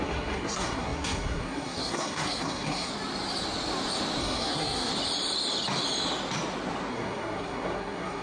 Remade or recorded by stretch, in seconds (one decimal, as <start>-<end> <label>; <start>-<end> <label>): 0.0-2.9 remade; 2.9-4.2 recorded; 4.2-4.9 remade; 4.9-6.9 recorded; 6.9-8.2 remade